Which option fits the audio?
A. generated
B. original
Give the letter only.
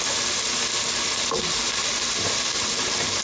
B